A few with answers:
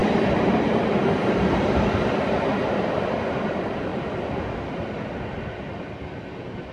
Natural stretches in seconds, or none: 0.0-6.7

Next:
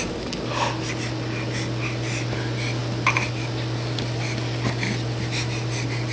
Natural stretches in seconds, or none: 0.0-6.1

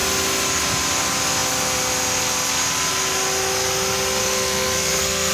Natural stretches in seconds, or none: 0.0-4.2

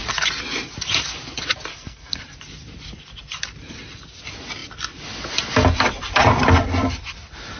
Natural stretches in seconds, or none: 0.0-1.7; 2.2-7.6

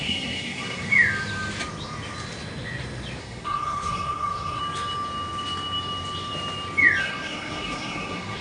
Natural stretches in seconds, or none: 0.9-3.2; 4.6-7.0